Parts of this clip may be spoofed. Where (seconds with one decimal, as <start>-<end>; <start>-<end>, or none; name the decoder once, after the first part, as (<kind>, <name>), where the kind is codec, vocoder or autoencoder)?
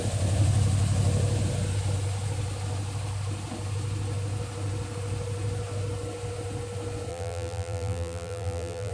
7.1-8.9 (vocoder, BigVGAN v2)